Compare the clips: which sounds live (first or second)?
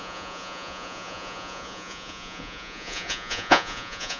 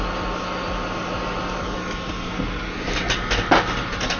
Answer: second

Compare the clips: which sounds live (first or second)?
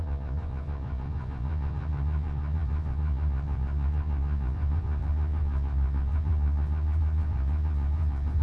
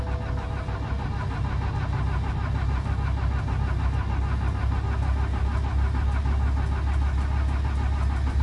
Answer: second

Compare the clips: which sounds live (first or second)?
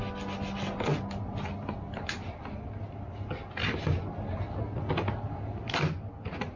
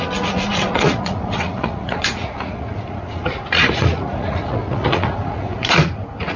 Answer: first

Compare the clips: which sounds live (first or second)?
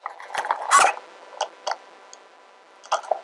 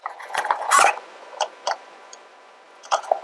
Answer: first